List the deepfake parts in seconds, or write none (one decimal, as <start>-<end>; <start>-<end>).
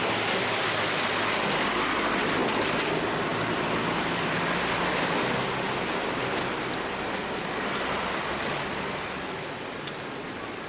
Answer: none